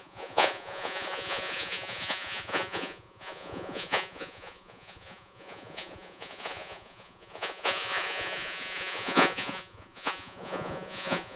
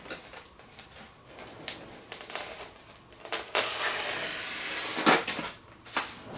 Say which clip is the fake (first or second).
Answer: first